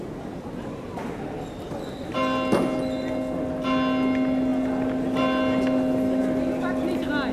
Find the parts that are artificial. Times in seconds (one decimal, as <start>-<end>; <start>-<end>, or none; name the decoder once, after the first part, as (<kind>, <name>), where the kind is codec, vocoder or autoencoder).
none